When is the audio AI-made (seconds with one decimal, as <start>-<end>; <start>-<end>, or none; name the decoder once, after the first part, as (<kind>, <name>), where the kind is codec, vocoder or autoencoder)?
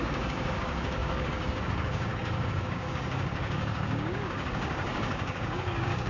0.0-6.1 (codec, DAC)